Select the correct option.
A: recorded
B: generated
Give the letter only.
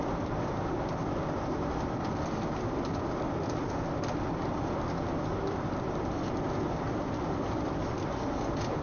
A